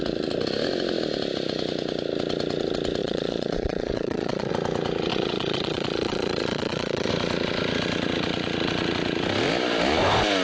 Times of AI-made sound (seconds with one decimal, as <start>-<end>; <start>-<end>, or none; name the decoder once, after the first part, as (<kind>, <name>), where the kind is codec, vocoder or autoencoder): 3.0-4.5 (vocoder, Vocos); 5.1-7.1